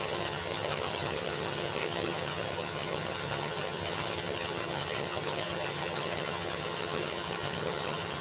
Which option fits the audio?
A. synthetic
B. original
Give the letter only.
A